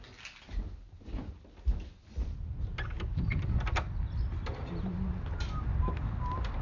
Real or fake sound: real